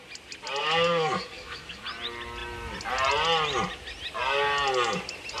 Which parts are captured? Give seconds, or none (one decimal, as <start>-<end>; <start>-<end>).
0.0-0.6; 1.8-5.4